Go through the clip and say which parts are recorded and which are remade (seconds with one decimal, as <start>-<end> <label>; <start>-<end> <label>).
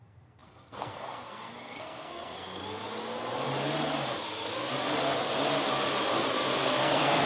0.0-2.6 remade; 2.6-6.3 recorded; 6.3-7.3 remade